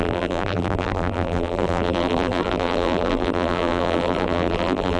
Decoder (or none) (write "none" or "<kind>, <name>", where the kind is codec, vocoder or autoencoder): vocoder, BigVGAN v2